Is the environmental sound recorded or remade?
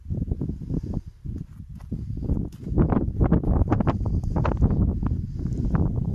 recorded